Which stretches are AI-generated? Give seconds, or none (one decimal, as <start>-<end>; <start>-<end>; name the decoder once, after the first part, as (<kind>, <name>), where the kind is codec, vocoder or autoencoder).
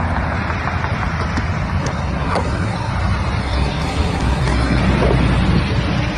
1.8-2.9 (codec, SNAC); 3.4-4.8